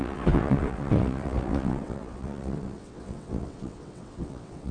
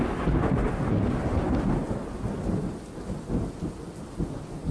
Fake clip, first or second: first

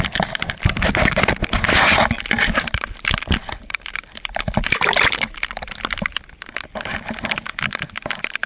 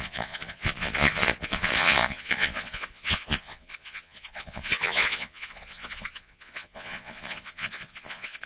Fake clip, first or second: second